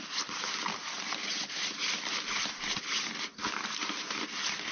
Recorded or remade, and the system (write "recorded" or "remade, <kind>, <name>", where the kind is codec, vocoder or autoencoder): recorded